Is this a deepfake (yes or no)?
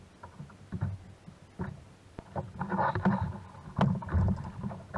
no